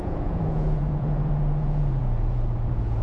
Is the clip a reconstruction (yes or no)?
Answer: yes